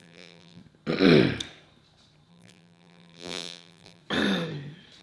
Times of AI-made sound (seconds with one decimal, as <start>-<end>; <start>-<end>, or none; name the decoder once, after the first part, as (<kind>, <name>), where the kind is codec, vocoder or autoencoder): 0.0-0.6 (vocoder, BigVGAN v2); 2.3-4.0